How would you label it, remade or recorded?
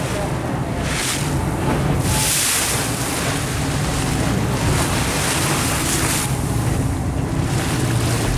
recorded